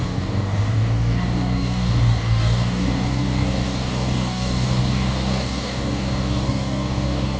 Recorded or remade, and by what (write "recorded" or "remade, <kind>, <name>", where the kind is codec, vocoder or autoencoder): remade, codec, DAC